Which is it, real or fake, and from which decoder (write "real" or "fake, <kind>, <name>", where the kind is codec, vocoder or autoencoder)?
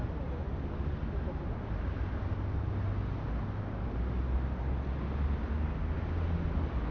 real